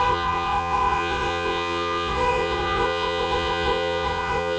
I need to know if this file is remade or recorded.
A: remade